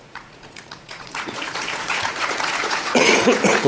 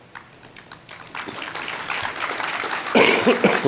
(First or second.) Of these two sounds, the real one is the second